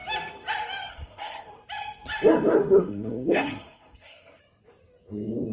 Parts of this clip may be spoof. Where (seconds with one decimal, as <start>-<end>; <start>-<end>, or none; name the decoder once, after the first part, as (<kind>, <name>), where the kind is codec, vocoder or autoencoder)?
0.9-1.5 (codec, SNAC); 2.6-4.4